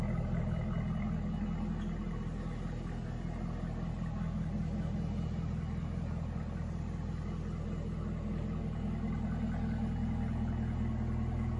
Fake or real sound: real